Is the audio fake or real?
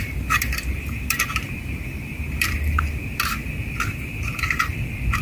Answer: fake